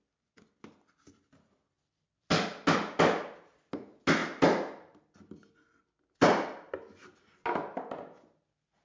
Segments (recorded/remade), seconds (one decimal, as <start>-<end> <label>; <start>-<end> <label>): 0.0-8.8 recorded